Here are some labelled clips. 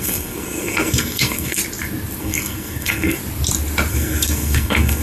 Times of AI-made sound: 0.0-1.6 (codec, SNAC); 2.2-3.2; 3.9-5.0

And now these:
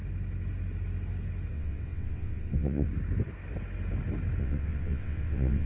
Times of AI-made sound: 1.5-2.9 (vocoder, WaveNeXt); 4.4-5.7